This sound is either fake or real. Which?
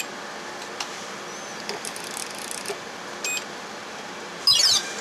real